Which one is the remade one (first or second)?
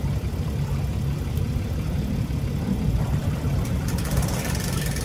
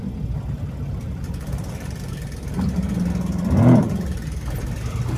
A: first